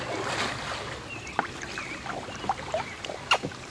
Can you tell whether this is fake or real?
real